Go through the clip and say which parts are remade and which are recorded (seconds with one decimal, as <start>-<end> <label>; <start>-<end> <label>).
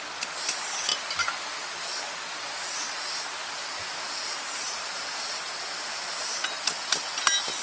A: 0.0-0.9 recorded; 0.9-2.0 remade; 2.0-3.6 recorded; 3.6-5.3 remade; 5.3-7.6 recorded